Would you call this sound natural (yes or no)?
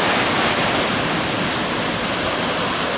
yes